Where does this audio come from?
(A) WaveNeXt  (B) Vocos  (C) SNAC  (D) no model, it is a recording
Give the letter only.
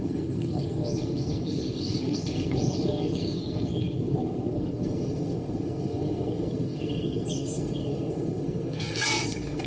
C